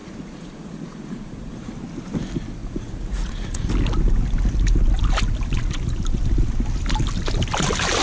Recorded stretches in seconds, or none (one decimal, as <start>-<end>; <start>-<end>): 1.7-2.6; 3.7-8.0